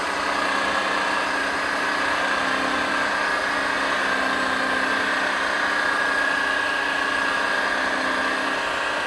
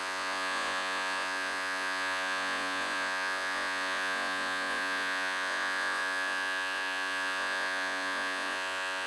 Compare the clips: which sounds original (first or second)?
first